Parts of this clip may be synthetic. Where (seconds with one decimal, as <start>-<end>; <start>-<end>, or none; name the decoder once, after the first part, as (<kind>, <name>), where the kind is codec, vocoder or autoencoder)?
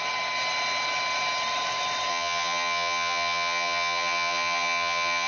2.1-5.3 (vocoder, HiFi-GAN)